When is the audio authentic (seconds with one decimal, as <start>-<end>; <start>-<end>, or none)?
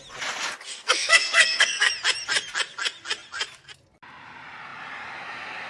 0.0-0.7; 1.9-5.7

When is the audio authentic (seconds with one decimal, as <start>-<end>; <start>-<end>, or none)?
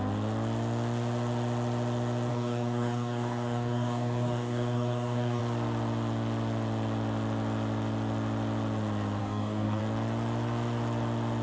0.0-2.3; 5.4-9.2; 9.8-11.4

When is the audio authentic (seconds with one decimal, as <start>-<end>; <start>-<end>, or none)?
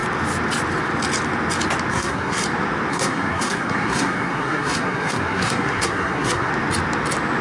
0.0-1.9; 2.4-2.9; 6.5-7.4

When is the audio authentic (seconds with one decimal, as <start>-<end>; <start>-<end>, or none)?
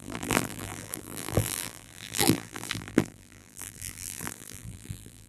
none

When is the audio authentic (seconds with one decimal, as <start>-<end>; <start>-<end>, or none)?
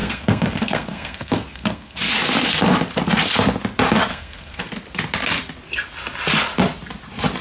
2.0-4.1; 4.6-7.4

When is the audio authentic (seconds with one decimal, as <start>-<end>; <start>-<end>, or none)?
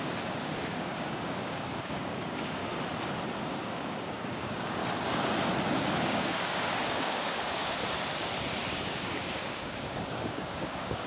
2.6-3.4; 4.8-6.0; 7.8-8.7